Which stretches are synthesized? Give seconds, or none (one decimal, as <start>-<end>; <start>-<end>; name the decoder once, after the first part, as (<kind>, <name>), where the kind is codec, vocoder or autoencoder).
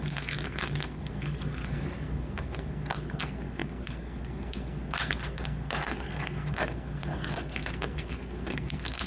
0.0-9.1 (codec, SNAC)